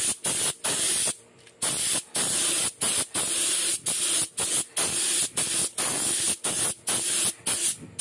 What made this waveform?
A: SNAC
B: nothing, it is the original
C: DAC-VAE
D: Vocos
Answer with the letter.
B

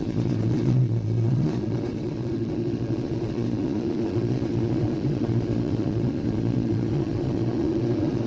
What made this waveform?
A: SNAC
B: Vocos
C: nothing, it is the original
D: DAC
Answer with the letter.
B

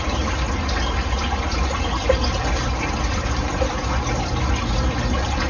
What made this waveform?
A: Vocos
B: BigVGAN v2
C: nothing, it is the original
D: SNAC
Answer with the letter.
C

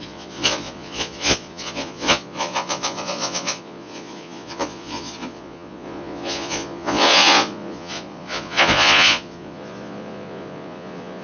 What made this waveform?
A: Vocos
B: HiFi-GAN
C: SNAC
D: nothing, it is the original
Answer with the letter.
A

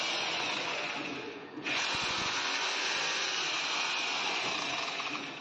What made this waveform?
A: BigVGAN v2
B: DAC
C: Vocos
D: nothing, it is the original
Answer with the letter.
C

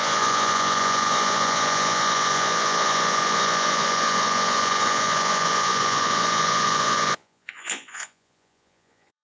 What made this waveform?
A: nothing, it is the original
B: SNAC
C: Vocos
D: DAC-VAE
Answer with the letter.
C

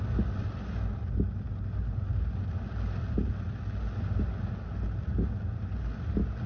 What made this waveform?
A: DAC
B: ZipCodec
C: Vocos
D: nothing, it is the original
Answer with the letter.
D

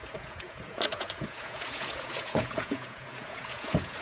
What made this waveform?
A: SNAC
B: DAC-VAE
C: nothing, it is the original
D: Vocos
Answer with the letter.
D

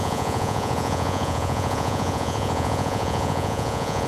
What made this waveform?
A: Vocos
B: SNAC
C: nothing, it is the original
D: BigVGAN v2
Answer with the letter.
A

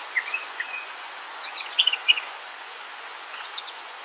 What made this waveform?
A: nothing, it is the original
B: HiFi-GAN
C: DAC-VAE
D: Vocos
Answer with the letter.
D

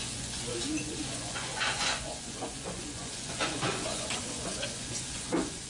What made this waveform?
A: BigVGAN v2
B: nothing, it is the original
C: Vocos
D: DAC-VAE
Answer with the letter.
C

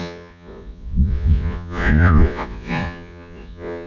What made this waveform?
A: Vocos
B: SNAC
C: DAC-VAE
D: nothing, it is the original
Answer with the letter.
A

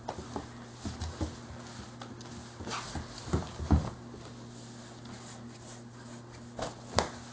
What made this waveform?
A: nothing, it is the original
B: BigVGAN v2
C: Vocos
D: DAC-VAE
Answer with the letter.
A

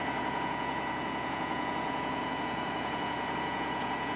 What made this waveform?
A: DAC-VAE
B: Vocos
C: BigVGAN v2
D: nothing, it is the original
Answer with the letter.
B